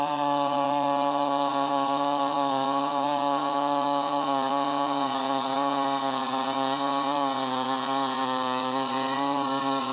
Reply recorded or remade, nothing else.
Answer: remade